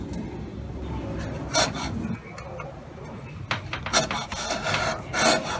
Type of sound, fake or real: real